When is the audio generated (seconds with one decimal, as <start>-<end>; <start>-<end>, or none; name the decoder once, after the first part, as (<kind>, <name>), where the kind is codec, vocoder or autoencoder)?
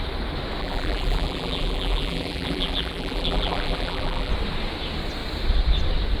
0.6-4.3 (vocoder, BigVGAN v2)